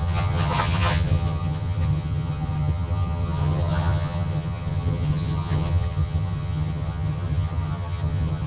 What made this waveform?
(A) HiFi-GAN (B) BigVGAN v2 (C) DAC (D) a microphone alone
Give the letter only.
A